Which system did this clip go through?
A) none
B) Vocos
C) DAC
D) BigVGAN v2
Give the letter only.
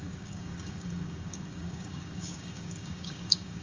C